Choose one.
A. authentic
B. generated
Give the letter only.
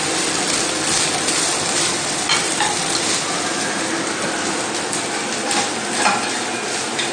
A